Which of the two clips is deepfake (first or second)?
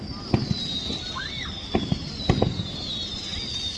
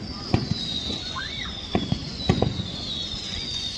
second